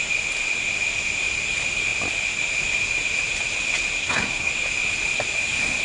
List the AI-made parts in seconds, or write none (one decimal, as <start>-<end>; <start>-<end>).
4.0-4.5